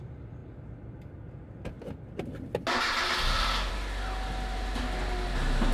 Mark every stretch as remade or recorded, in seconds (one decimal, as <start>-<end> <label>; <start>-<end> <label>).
0.0-5.7 recorded